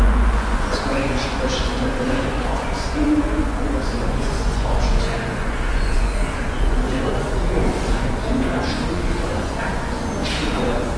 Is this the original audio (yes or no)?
no